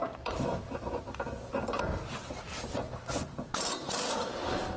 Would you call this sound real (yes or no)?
yes